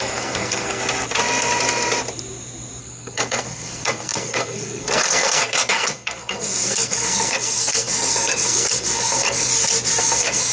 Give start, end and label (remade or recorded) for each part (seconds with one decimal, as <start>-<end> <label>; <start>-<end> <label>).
0.0-0.8 remade; 0.8-2.8 recorded; 2.8-9.5 remade; 9.5-10.0 recorded; 10.0-10.5 remade